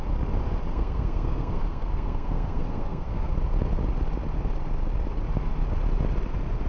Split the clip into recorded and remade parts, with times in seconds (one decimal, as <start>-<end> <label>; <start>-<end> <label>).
0.0-0.7 recorded; 0.7-3.3 remade; 3.3-6.7 recorded